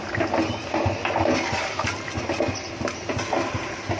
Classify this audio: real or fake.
real